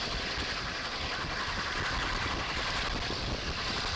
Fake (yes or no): no